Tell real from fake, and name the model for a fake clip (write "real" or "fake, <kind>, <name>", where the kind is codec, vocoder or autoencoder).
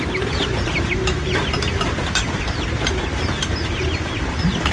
fake, vocoder, BigVGAN v2